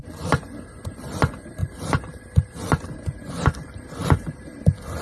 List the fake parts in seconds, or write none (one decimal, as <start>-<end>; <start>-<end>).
1.6-4.6